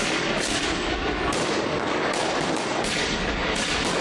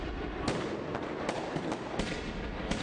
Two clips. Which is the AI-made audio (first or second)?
first